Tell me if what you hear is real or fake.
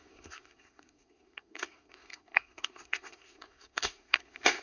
fake